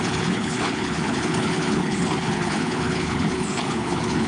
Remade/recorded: remade